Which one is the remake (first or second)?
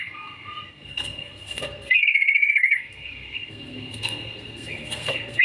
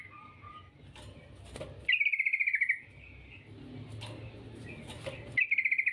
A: first